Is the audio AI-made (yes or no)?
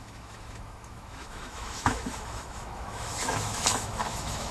yes